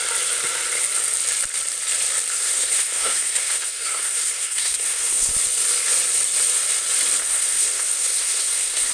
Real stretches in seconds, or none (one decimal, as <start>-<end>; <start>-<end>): 0.0-2.3; 5.3-7.2